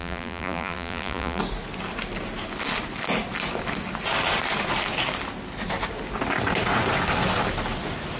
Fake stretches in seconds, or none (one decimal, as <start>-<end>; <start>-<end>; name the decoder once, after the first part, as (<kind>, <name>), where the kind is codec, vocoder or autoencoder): 0.0-1.4 (vocoder, BigVGAN v2)